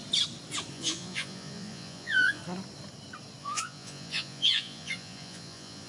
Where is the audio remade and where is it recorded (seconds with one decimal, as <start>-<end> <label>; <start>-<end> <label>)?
0.0-0.7 recorded; 0.7-2.4 remade; 2.4-3.4 recorded; 3.4-5.9 remade